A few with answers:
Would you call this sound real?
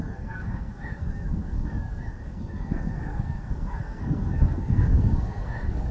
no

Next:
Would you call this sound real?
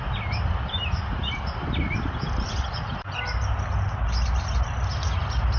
yes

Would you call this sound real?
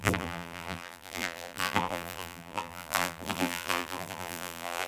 no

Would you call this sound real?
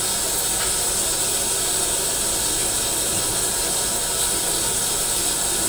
yes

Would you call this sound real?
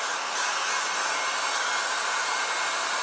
yes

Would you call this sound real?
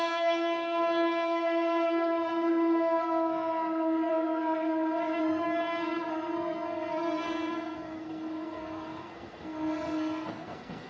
no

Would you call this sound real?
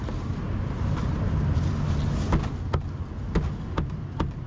yes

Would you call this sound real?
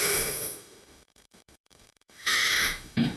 no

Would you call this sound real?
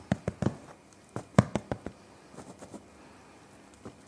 yes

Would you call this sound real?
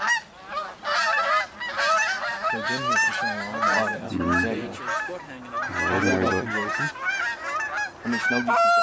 yes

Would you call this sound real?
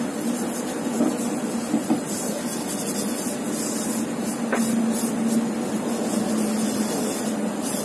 yes